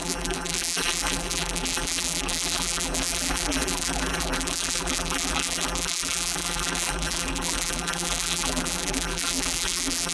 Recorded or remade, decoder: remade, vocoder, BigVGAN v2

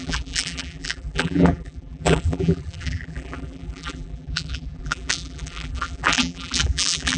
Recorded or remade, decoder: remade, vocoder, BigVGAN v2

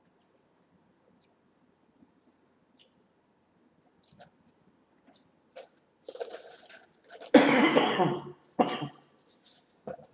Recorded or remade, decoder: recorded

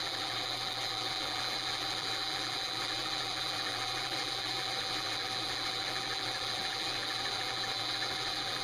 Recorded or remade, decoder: remade, vocoder, BigVGAN v2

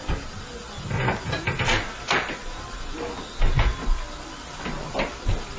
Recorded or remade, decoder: recorded